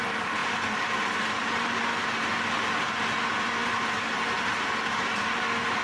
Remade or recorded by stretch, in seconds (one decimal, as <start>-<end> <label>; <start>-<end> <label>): 0.0-5.8 recorded